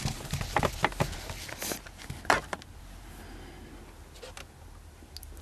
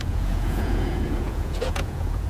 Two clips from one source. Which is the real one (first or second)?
first